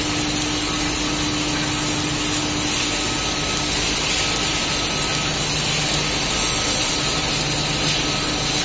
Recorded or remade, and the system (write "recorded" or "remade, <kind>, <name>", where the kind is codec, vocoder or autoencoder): recorded